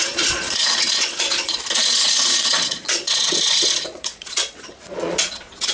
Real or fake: fake